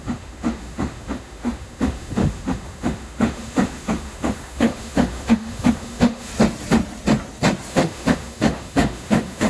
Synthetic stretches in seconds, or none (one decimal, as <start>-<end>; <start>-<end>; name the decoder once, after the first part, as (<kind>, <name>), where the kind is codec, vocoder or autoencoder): 0.0-6.3 (autoencoder, DAC-VAE); 7.7-9.5